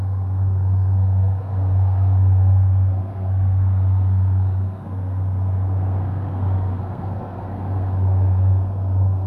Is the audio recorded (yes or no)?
no